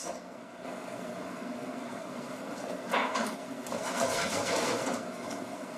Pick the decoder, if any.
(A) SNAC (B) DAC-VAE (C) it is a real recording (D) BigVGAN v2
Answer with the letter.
A